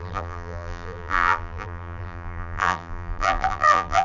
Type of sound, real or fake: fake